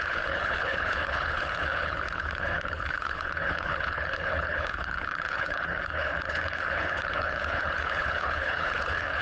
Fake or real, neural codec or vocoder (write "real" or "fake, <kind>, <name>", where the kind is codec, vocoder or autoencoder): fake, codec, HILCodec